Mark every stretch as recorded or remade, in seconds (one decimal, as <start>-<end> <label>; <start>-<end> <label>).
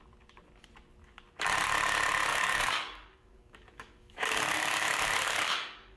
0.0-2.3 recorded; 2.3-6.0 remade